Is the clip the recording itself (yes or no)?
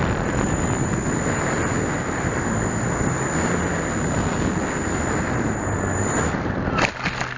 yes